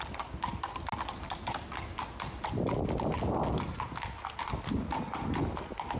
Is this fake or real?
real